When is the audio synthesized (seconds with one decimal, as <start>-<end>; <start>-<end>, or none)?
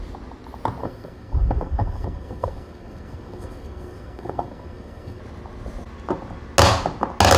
0.8-5.2